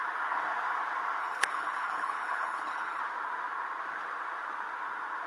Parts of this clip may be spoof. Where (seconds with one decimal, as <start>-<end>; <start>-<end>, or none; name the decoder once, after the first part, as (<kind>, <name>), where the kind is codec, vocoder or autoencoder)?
1.2-3.0 (codec, HILCodec)

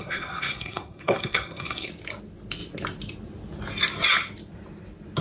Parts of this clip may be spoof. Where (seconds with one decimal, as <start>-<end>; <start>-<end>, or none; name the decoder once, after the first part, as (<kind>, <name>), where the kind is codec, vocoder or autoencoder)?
0.0-1.9 (codec, SNAC)

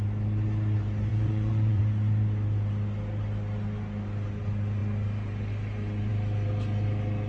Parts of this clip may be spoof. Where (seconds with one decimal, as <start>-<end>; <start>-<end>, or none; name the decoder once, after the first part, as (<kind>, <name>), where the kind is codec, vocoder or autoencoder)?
1.1-1.8 (vocoder, Vocos)

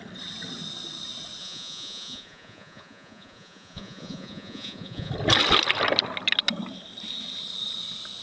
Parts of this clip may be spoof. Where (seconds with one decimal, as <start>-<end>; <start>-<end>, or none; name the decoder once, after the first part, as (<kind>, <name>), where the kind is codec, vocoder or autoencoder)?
1.4-5.1 (vocoder, Vocos)